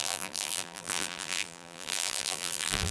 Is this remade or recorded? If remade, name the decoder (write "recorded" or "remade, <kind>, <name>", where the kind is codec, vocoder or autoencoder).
remade, vocoder, BigVGAN v2